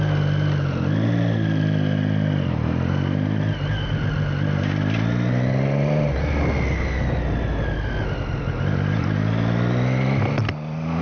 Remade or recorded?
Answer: recorded